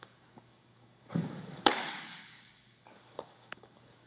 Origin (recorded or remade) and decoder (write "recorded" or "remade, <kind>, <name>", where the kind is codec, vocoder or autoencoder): remade, codec, DAC